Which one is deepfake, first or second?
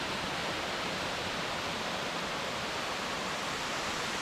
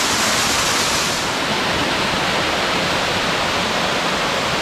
first